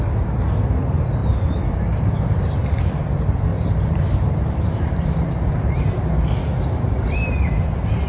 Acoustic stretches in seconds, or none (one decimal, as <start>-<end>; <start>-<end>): 0.0-1.2; 2.8-3.5; 5.9-6.4